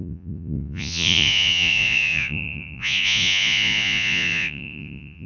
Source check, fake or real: fake